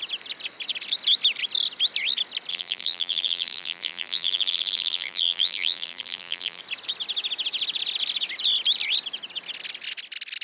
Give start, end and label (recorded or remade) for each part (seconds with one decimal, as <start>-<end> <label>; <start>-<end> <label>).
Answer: 0.0-2.5 recorded; 2.5-6.6 remade; 6.6-10.4 recorded